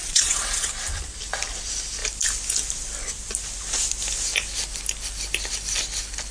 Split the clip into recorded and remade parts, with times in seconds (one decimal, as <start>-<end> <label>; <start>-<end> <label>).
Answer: 0.0-0.7 remade; 0.7-6.3 recorded